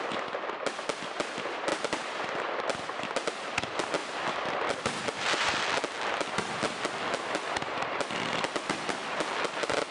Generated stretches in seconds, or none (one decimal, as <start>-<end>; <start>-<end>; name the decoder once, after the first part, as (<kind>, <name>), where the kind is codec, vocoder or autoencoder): 1.7-2.2 (vocoder, BigVGAN v2)